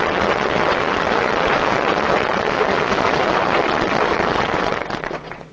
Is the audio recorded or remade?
remade